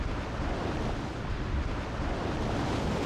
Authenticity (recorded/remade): recorded